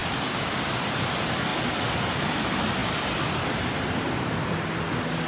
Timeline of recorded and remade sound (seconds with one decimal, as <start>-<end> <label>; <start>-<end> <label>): 0.0-0.7 remade; 0.7-5.3 recorded